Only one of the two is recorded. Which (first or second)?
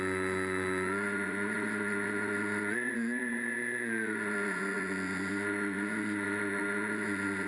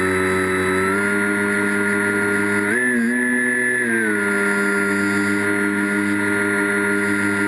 second